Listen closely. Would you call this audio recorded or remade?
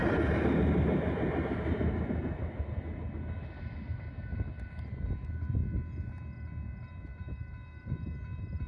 recorded